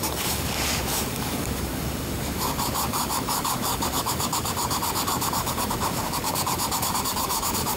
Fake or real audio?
fake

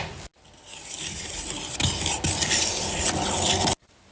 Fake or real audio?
real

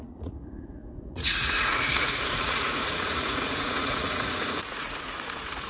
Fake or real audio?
fake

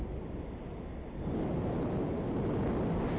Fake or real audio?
real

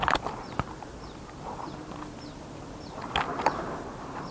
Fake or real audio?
real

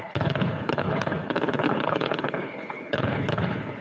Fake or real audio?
fake